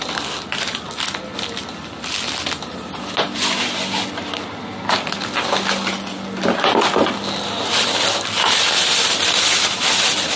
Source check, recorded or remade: recorded